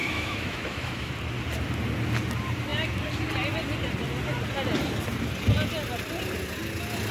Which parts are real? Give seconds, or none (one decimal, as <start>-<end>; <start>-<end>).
1.1-7.1